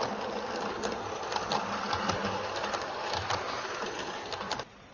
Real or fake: real